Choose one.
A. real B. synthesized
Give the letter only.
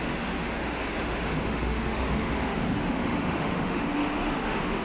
B